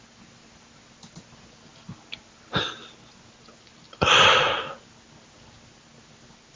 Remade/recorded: recorded